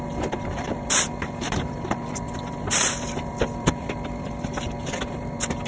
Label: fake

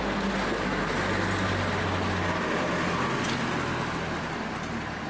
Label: real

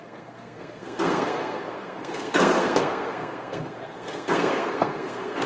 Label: fake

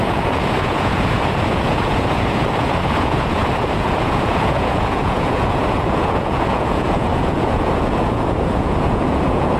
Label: fake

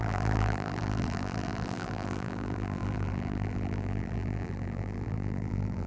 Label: fake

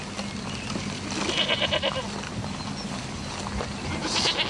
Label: real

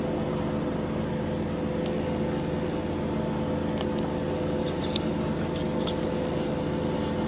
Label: real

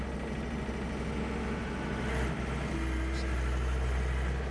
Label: real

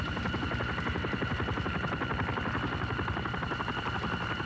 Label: real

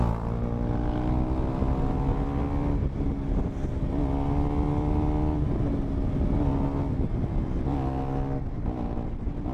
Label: real